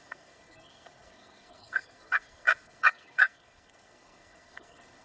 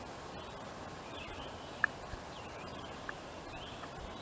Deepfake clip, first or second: first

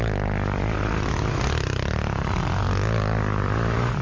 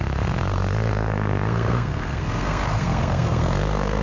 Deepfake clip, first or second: second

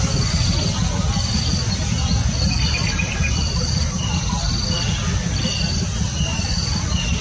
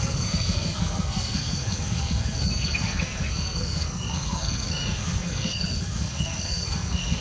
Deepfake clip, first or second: second